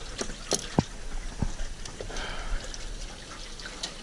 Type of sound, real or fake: real